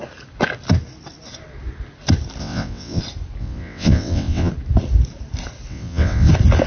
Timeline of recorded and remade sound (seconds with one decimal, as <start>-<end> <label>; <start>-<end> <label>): 0.0-2.4 recorded; 2.4-3.0 remade; 3.0-3.4 recorded; 3.4-4.5 remade; 4.5-5.7 recorded; 5.7-6.3 remade; 6.3-6.7 recorded